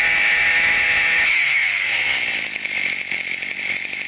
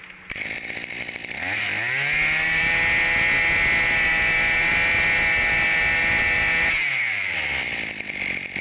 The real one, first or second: second